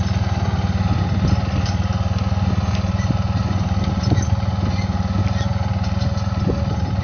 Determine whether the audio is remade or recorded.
recorded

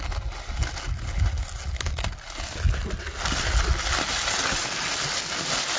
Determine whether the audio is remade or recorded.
recorded